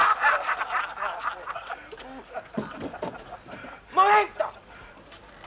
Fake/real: real